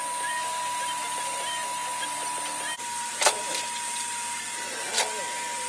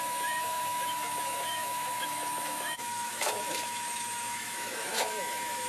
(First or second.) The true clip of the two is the first